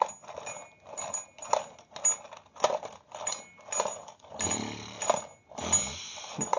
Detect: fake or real real